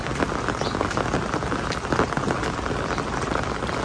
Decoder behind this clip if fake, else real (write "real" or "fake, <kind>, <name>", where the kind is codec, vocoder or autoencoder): real